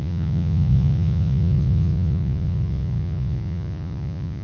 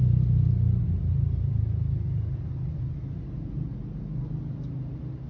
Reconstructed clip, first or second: first